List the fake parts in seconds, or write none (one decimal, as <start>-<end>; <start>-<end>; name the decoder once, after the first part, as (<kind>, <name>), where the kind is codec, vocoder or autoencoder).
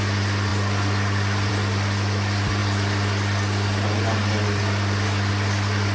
none